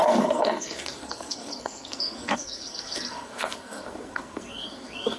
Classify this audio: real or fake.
fake